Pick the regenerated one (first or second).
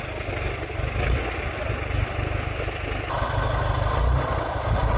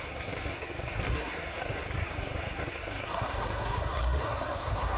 second